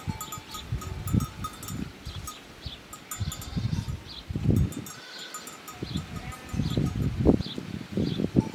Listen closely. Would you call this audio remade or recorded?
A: recorded